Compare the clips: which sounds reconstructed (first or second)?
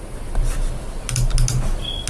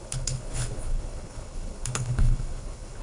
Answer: second